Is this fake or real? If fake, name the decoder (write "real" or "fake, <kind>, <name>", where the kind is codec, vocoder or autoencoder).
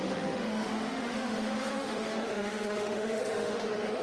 fake, autoencoder, DAC-VAE